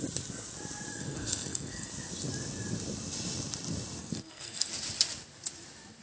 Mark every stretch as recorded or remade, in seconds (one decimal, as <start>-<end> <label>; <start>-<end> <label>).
0.0-0.9 recorded; 0.9-1.9 remade; 1.9-4.0 recorded; 4.0-4.7 remade; 4.7-6.0 recorded